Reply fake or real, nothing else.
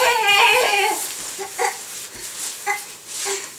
real